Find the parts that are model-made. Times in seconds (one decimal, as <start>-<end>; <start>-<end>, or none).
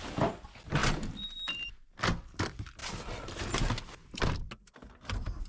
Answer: none